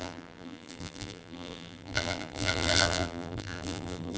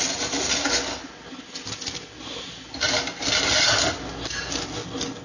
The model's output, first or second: first